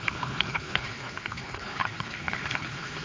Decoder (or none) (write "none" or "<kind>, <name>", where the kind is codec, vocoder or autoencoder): codec, HILCodec